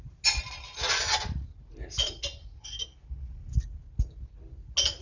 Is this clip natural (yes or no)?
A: yes